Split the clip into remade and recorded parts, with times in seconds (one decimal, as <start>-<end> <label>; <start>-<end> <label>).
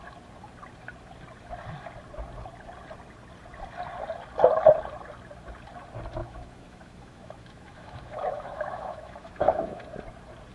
0.0-6.2 recorded; 6.2-9.8 remade; 9.8-10.5 recorded